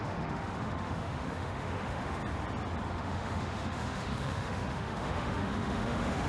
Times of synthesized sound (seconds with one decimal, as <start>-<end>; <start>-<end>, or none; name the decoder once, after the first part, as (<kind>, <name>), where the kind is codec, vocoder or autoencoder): 0.0-2.2 (autoencoder, DAC-VAE); 2.9-6.3

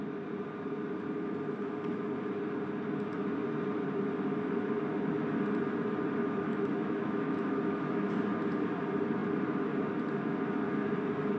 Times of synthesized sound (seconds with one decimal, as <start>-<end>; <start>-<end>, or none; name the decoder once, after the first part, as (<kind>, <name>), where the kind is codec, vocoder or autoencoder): 6.5-8.1 (autoencoder, DAC-VAE)

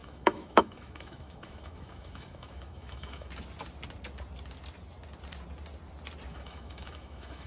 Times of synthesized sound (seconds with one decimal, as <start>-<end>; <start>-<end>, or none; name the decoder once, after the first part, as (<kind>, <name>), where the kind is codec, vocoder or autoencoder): 0.0-3.3 (autoencoder, DAC-VAE); 6.3-7.5